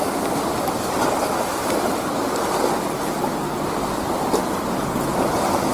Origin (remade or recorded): recorded